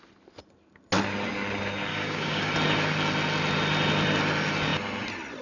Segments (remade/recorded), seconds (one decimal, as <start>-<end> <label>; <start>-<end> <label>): 0.0-1.9 recorded; 1.9-2.5 remade; 2.5-5.4 recorded